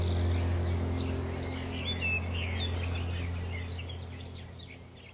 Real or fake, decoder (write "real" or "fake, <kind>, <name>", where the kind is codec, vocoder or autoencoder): real